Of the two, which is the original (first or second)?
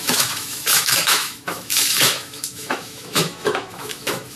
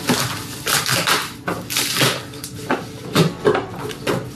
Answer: second